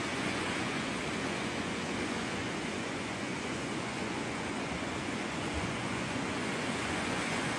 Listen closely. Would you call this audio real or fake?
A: fake